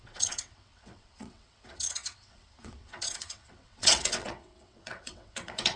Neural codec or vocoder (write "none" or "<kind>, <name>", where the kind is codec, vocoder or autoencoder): vocoder, WaveNeXt